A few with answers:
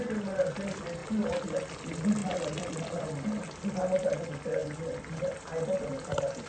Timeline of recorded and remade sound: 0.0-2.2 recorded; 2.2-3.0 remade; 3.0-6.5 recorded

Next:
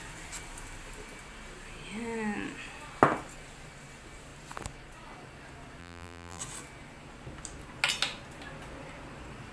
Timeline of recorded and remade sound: 0.0-5.8 recorded; 5.8-6.4 remade; 6.4-9.5 recorded

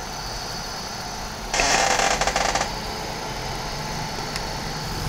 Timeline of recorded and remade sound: 0.0-1.9 remade; 1.9-5.1 recorded

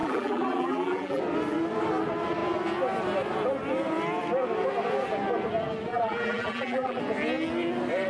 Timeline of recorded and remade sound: 0.0-1.2 remade; 1.2-5.9 recorded; 5.9-7.0 remade; 7.0-8.1 recorded